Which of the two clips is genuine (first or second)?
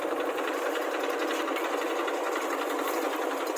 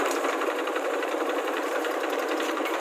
first